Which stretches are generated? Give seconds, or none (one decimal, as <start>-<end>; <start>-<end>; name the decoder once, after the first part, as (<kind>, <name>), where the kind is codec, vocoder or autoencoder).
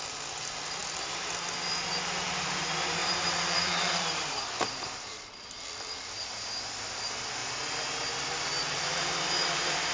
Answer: 0.8-1.3 (vocoder, BigVGAN v2); 3.0-5.3; 8.6-9.9